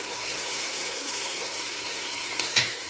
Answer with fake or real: fake